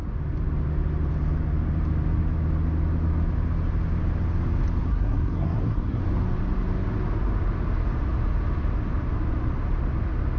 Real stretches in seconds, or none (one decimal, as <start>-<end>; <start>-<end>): 0.0-4.9; 6.0-10.4